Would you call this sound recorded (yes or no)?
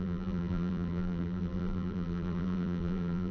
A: no